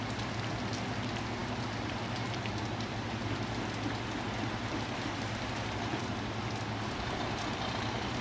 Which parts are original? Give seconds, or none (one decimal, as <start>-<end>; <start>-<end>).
0.0-1.4; 6.1-8.2